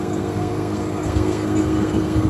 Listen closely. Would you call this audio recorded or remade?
remade